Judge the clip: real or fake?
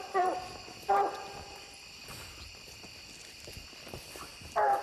real